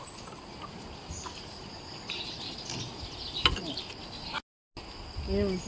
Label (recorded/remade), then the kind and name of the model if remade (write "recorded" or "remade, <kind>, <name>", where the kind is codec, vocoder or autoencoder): recorded